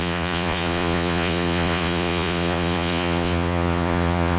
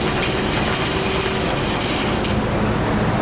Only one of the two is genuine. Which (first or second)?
second